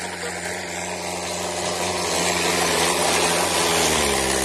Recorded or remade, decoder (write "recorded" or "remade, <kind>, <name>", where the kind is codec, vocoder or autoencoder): recorded